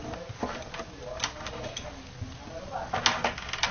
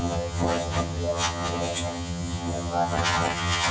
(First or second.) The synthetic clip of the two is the second